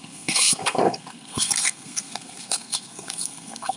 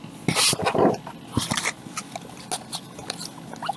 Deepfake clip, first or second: first